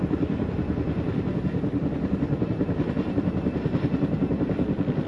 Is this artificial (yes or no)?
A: no